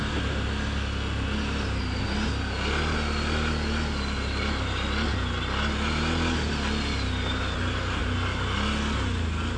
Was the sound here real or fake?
real